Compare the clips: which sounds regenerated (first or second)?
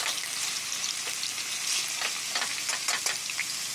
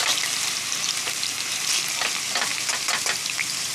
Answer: second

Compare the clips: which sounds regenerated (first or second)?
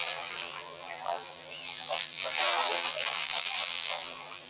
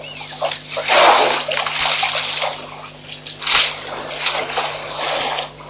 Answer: first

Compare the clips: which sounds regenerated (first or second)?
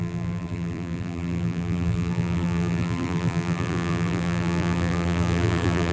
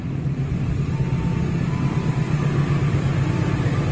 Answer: first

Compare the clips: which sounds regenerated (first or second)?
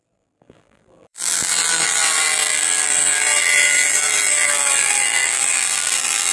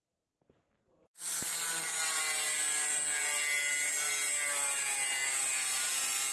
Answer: first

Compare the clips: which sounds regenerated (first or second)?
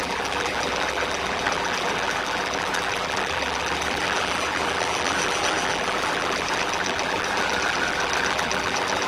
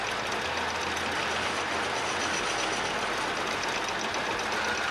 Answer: first